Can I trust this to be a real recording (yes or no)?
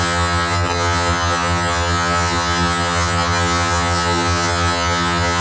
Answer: no